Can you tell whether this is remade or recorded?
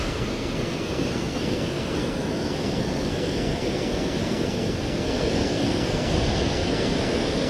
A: remade